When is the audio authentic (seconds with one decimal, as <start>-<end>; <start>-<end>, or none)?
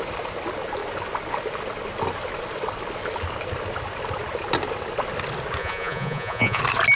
0.0-5.6; 6.6-7.0